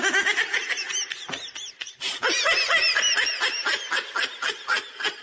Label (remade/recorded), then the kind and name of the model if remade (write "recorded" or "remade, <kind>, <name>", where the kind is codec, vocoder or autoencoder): recorded